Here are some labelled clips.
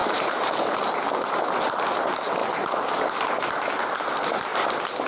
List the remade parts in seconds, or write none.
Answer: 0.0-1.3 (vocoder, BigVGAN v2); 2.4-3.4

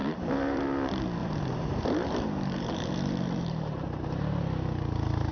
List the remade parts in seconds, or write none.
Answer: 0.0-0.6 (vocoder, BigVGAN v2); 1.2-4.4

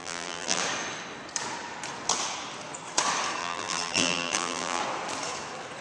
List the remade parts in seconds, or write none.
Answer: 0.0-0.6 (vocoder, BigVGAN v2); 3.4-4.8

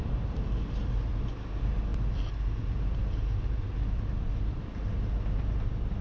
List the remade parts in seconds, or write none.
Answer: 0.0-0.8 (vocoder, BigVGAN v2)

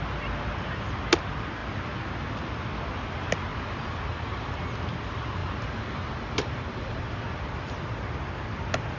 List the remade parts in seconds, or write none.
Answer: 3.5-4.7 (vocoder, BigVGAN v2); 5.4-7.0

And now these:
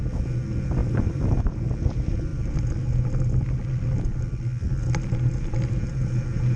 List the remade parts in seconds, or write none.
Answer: 0.8-1.5 (vocoder, BigVGAN v2)